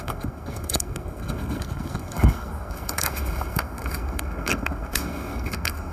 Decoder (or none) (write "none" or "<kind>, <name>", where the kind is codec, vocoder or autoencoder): codec, SNAC